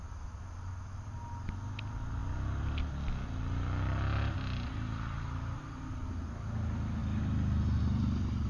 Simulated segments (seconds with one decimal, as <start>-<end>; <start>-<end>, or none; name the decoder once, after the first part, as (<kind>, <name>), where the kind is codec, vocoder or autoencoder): none